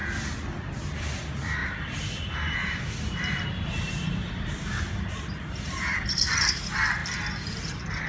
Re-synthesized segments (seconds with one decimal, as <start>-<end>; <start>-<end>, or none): 1.6-6.5